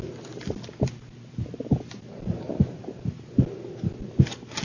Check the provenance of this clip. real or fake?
real